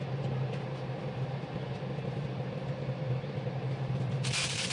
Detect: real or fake real